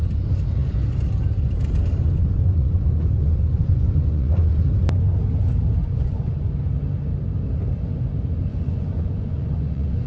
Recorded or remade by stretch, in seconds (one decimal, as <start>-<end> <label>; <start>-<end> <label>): 0.0-2.2 recorded; 2.2-4.6 remade; 4.6-5.8 recorded; 5.8-6.4 remade; 6.4-8.5 recorded; 8.5-10.1 remade

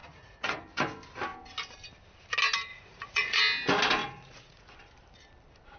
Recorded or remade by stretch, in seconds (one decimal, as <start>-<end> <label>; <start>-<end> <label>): 0.0-0.6 remade; 0.6-2.7 recorded; 2.7-3.4 remade; 3.4-4.0 recorded; 4.0-4.7 remade; 4.7-5.8 recorded

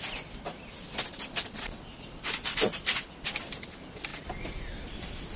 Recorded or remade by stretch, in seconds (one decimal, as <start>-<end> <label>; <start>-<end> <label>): 0.0-5.4 recorded

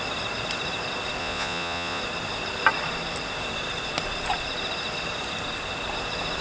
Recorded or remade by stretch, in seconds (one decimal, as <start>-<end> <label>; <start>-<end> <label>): 0.0-1.2 recorded; 1.2-2.0 remade; 2.0-6.4 recorded

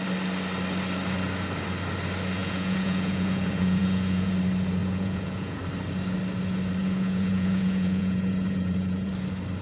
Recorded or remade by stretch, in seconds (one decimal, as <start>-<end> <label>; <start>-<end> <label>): 0.0-2.4 recorded; 2.4-4.3 remade; 4.3-4.8 recorded; 4.8-5.6 remade; 5.6-6.8 recorded; 6.8-9.1 remade; 9.1-9.6 recorded